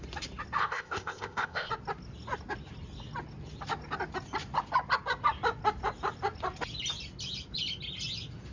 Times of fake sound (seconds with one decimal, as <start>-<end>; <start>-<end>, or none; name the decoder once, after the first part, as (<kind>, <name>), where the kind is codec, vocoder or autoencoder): 0.6-1.7 (codec, ZipCodec)